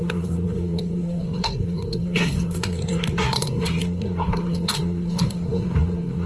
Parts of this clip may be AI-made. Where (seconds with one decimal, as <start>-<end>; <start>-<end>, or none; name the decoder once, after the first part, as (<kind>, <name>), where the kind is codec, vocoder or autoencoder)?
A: 0.0-6.3 (codec, SNAC)